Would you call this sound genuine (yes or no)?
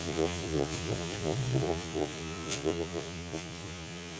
no